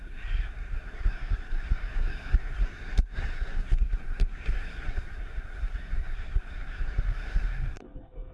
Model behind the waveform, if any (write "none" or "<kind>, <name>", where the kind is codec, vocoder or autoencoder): codec, SNAC